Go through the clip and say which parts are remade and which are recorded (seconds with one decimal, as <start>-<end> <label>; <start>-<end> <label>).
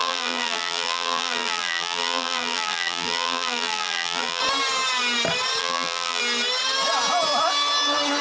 0.0-4.4 remade; 4.4-5.6 recorded; 5.6-6.2 remade; 6.2-8.2 recorded